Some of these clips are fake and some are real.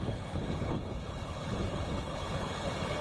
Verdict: fake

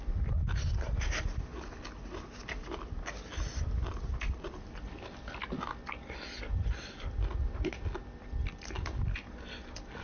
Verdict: real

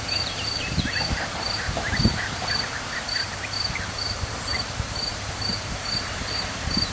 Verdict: fake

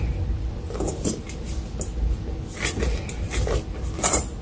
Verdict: real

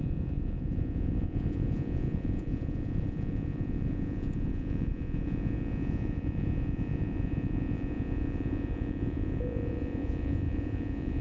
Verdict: fake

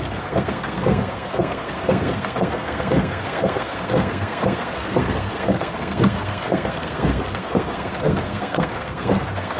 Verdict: fake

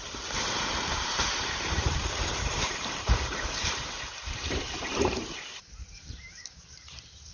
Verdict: fake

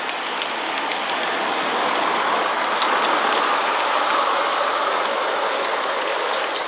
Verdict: real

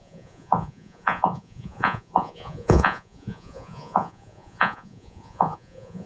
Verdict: fake